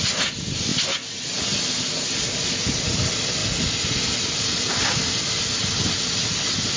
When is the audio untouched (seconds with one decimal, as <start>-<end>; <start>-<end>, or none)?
0.0-6.8